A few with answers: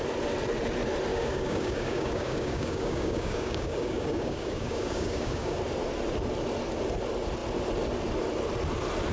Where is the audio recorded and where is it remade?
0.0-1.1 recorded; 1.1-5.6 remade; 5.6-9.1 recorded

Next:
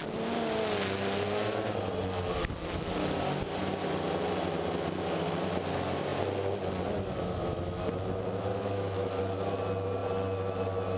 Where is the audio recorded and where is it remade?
0.0-8.5 recorded; 8.5-9.2 remade; 9.2-11.0 recorded

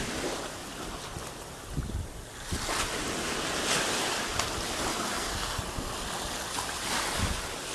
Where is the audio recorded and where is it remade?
0.0-4.9 recorded; 4.9-5.6 remade; 5.6-7.7 recorded

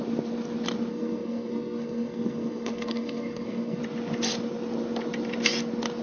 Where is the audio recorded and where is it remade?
0.0-0.9 recorded; 0.9-3.8 remade; 3.8-6.0 recorded

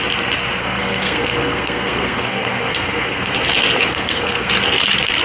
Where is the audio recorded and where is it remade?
0.0-0.6 recorded; 0.6-3.3 remade; 3.3-3.9 recorded; 3.9-4.5 remade; 4.5-5.2 recorded